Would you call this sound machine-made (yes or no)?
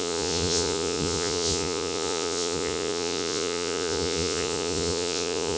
yes